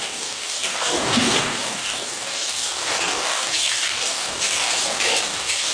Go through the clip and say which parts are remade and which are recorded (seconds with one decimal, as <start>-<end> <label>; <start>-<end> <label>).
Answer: 0.0-5.7 remade